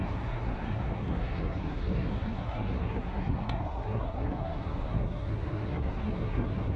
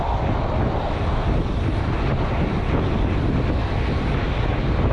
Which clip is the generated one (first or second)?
first